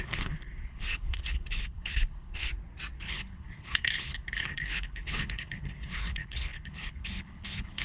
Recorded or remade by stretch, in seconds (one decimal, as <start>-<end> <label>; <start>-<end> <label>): 0.0-2.5 remade; 2.5-3.0 recorded; 3.0-7.8 remade